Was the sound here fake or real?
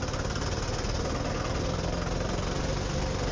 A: real